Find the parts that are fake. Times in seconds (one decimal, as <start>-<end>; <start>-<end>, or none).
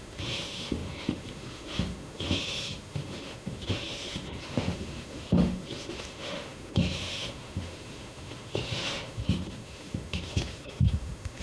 0.0-11.4